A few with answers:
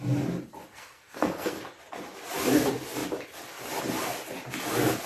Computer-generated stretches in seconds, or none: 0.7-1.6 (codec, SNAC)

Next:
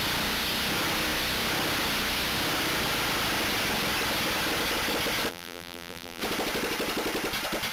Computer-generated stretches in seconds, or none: 5.3-6.2 (vocoder, BigVGAN v2)